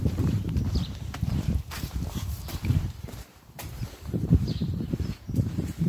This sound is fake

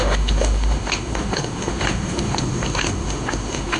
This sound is fake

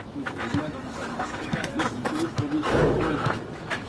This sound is fake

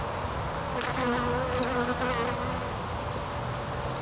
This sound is real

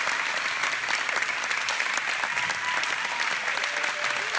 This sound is real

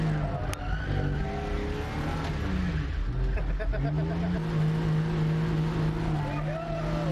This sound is real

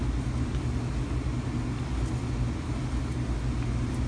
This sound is real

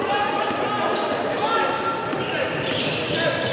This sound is real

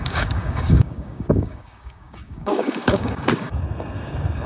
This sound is fake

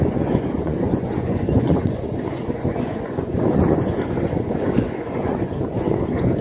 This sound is fake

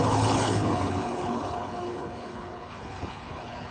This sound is fake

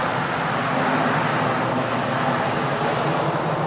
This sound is real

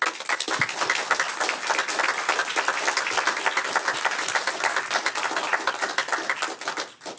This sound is real